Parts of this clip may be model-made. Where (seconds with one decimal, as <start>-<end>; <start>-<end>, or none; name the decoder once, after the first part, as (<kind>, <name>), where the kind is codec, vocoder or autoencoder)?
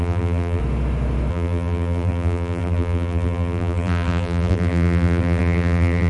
0.0-0.6 (vocoder, BigVGAN v2); 1.3-6.1